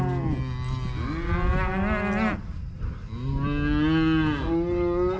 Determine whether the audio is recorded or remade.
recorded